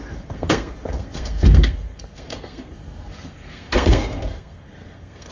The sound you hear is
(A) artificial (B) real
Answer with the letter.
A